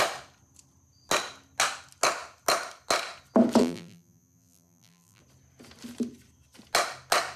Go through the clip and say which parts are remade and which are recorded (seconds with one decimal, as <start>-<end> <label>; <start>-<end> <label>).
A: 0.0-3.6 recorded; 3.6-5.2 remade; 5.2-7.4 recorded